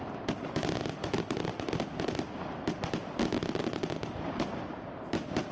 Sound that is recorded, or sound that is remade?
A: recorded